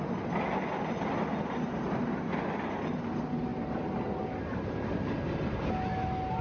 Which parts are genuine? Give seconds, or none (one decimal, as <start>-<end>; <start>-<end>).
0.0-6.4